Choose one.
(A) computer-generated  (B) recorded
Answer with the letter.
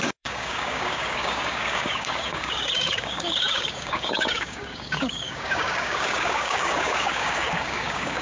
A